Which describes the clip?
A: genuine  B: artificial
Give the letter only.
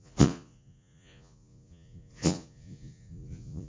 B